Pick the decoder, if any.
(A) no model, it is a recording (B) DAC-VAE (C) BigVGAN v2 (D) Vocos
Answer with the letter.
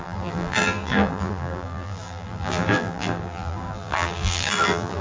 C